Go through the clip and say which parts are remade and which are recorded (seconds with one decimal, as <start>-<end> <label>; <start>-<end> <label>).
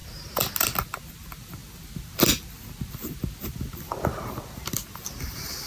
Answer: 0.0-5.7 recorded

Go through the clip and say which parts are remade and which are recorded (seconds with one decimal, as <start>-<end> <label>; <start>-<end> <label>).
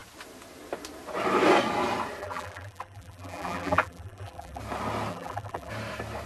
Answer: 0.0-2.2 recorded; 2.2-4.6 remade; 4.6-5.1 recorded; 5.1-5.7 remade; 5.7-6.3 recorded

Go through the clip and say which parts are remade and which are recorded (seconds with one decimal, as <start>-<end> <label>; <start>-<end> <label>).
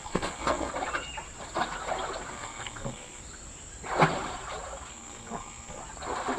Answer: 0.0-0.7 remade; 0.7-2.3 recorded; 2.3-3.2 remade; 3.2-4.9 recorded; 4.9-5.8 remade; 5.8-6.4 recorded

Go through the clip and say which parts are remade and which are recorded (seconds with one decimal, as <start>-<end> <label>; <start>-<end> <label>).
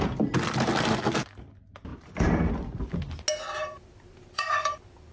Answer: 0.0-1.9 recorded; 1.9-2.9 remade; 2.9-3.4 recorded; 3.4-5.1 remade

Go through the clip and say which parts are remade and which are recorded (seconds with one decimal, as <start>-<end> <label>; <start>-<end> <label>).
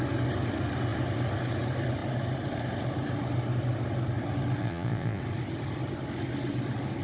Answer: 0.0-4.6 recorded; 4.6-5.2 remade; 5.2-7.0 recorded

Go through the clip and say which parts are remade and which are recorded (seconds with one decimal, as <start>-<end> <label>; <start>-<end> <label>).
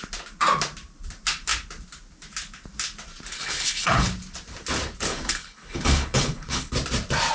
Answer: 0.0-3.3 recorded; 3.3-4.1 remade; 4.1-5.1 recorded; 5.1-6.7 remade; 6.7-7.3 recorded